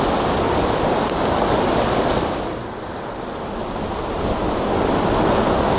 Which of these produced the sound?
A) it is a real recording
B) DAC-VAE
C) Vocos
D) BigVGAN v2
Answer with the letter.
A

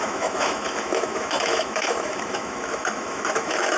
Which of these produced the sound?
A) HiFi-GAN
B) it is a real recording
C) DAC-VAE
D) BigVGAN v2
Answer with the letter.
C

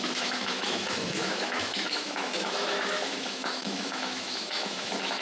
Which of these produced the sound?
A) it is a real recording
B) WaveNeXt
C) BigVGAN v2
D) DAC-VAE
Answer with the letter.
D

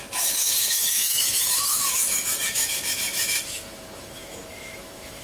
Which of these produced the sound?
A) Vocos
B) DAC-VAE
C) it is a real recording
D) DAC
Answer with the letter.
B